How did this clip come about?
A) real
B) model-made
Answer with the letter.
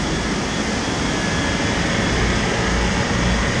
A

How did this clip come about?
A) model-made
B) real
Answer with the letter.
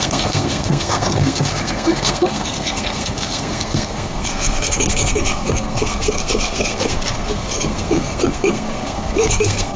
A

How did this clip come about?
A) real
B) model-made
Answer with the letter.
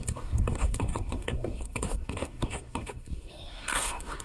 B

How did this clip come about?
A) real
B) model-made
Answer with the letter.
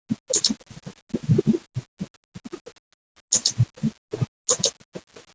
A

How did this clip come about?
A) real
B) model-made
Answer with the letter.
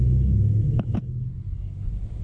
A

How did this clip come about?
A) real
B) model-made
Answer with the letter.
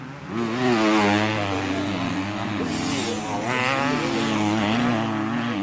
A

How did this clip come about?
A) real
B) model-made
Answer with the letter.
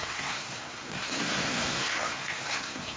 B